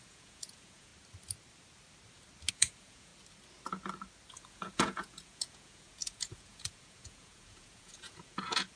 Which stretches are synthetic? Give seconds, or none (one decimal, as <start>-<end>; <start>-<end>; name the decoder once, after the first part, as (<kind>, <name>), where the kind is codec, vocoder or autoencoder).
0.0-0.9 (vocoder, Vocos); 2.5-3.1; 4.3-8.8